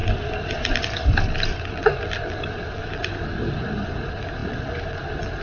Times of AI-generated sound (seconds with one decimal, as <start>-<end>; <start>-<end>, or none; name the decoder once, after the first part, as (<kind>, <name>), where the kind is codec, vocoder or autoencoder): none